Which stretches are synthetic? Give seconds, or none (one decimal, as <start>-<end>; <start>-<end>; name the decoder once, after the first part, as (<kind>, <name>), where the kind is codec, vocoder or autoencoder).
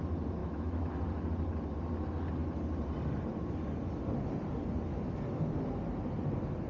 0.4-0.9 (autoencoder, DAC-VAE)